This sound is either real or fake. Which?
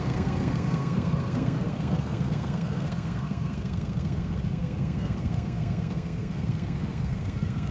fake